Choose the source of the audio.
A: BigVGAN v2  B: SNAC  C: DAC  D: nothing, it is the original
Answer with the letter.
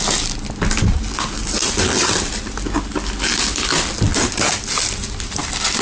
D